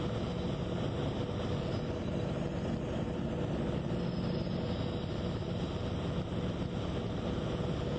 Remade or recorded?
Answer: recorded